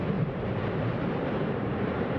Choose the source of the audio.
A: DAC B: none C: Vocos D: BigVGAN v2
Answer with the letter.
D